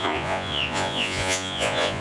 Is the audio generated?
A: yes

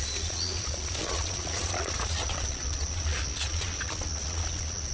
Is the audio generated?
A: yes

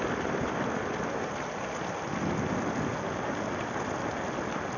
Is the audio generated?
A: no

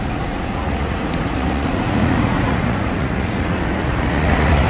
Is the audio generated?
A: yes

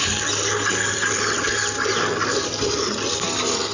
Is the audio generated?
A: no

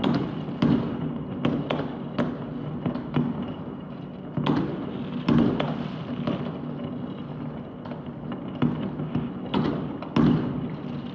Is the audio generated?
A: no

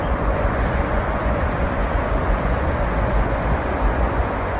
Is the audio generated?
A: yes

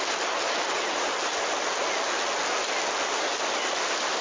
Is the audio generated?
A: no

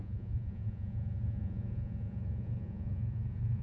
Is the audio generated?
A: yes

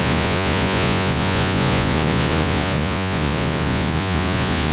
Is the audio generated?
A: yes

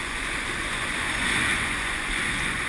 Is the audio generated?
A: yes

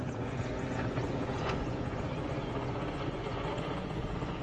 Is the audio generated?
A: yes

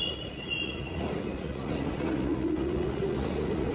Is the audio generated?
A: yes